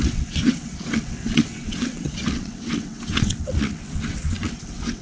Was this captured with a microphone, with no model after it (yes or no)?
no